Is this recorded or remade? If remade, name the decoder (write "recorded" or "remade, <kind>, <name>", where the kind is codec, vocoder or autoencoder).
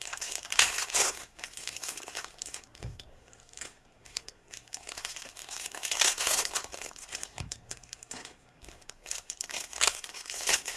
remade, codec, SNAC